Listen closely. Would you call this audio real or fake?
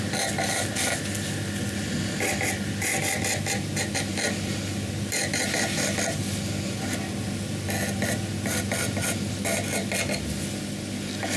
real